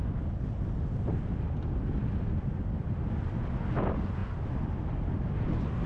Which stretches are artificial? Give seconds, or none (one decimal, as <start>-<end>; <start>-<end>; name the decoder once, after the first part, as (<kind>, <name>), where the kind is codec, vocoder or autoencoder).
none